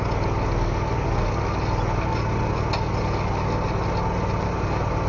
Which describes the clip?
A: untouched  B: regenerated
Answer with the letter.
A